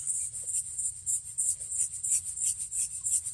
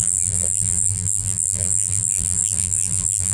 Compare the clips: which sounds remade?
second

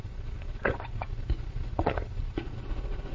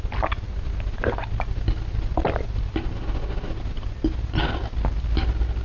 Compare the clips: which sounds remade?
first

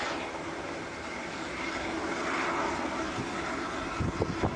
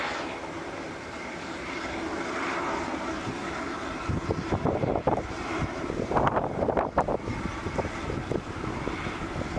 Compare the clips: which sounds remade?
second